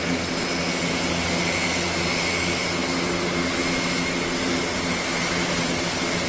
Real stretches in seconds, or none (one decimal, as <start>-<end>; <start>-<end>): 0.0-6.3